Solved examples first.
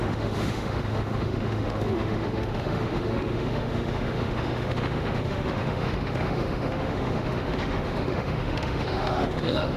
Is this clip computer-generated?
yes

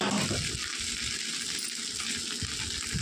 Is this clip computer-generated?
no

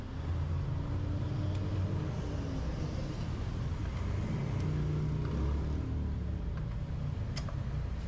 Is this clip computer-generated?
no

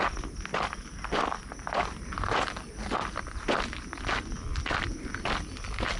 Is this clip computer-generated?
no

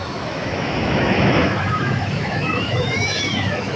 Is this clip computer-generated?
yes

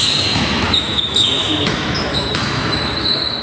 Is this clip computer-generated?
yes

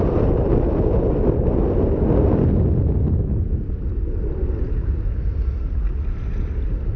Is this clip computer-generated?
no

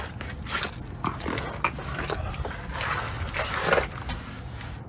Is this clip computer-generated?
no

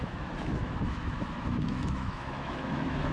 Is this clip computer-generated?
yes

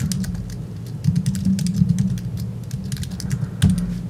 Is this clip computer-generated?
no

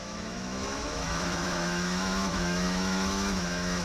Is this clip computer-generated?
yes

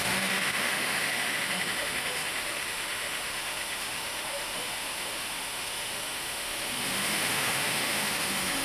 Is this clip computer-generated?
yes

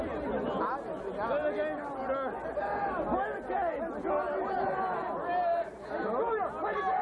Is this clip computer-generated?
no